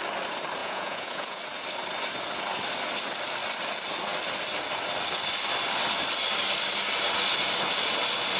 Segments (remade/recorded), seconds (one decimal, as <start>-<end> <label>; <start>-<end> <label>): 0.0-0.6 recorded; 0.6-1.4 remade; 1.4-8.4 recorded